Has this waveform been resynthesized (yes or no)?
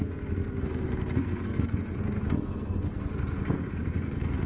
yes